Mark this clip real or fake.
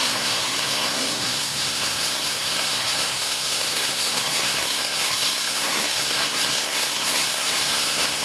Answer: fake